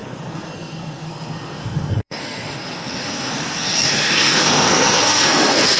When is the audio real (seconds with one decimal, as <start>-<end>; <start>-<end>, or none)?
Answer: none